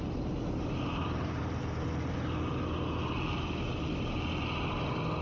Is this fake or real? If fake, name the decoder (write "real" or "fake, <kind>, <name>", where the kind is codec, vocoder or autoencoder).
real